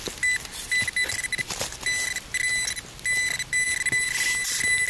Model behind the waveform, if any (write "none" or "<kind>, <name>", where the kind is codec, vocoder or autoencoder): none